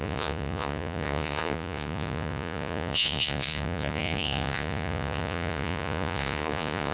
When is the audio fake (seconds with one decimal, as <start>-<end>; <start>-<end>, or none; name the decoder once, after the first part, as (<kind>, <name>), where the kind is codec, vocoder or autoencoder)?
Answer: 0.0-6.9 (vocoder, Vocos)